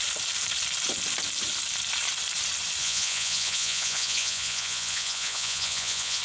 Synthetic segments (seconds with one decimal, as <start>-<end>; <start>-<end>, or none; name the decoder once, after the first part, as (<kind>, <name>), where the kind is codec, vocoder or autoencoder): 2.8-6.2 (vocoder, Vocos)